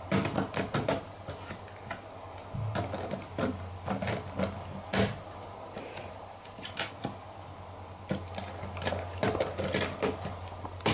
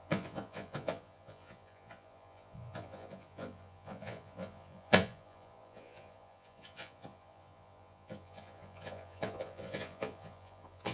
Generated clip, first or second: second